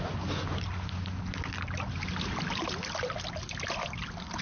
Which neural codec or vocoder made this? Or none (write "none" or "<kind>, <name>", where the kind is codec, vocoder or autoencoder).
none